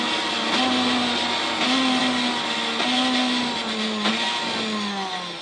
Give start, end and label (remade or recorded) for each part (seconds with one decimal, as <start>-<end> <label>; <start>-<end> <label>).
0.0-5.4 recorded